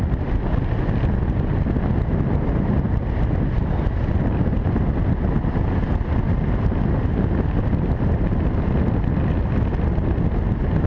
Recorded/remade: recorded